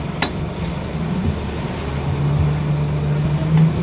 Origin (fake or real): real